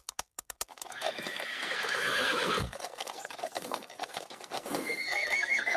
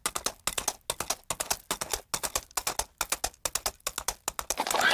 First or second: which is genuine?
second